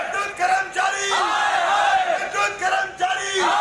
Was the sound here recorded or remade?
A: recorded